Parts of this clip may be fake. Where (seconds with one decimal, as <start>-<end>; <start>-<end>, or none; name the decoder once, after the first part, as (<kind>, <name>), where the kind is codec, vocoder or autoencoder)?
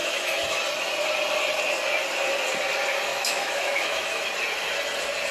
0.0-0.6 (autoencoder, DAC-VAE); 3.1-4.3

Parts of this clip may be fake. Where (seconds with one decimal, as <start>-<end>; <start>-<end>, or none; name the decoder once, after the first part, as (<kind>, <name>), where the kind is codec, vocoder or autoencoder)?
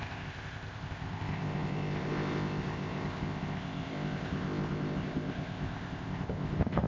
0.0-6.9 (codec, ZipCodec)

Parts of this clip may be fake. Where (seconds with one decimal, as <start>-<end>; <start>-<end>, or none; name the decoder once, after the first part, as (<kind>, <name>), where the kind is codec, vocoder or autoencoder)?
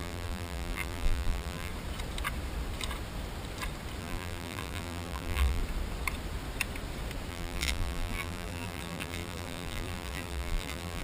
0.0-1.7 (vocoder, BigVGAN v2); 4.0-5.6; 7.3-11.0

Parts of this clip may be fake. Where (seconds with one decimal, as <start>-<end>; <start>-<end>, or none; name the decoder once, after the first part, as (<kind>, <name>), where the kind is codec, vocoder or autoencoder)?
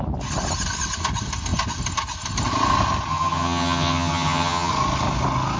3.1-4.7 (vocoder, HiFi-GAN)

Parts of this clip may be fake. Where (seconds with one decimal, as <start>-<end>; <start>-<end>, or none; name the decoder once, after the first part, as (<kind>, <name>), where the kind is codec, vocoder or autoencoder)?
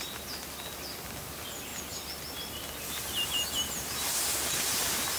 none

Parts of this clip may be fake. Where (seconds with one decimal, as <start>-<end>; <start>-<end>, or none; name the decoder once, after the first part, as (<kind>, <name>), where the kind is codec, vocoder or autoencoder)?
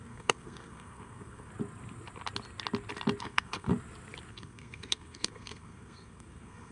0.0-1.5 (codec, SNAC); 3.2-3.7; 4.3-6.7